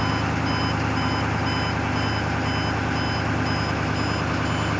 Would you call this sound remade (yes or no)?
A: no